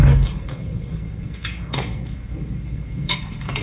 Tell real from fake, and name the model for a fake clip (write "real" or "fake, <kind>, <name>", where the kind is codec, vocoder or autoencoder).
fake, codec, SNAC